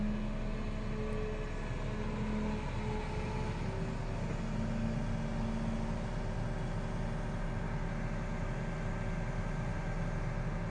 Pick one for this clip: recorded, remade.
recorded